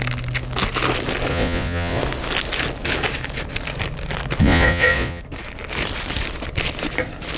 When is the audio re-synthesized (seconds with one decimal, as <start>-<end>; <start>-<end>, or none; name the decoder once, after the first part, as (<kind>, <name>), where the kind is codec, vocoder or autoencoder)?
1.3-2.0 (vocoder, Vocos); 4.4-5.2